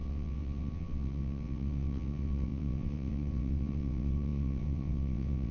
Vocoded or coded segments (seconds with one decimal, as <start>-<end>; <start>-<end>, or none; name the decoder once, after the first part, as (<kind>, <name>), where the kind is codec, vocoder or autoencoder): 0.0-5.5 (vocoder, WaveNeXt)